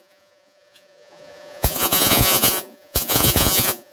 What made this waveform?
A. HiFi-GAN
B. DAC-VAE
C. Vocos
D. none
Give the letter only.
C